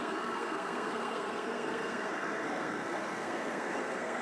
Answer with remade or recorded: remade